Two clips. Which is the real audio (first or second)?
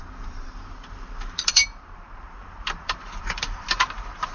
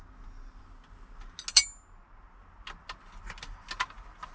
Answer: second